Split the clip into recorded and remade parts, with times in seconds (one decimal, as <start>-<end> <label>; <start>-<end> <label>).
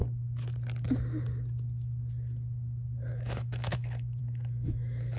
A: 0.0-3.1 recorded; 3.1-5.2 remade